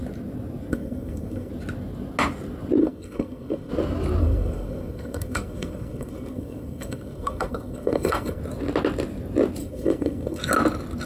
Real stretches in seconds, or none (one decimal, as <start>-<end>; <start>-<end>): 0.0-0.7; 1.5-2.8; 3.7-4.2; 8.4-9.6; 10.4-11.1